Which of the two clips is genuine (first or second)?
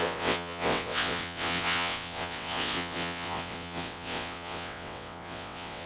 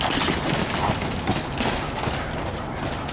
second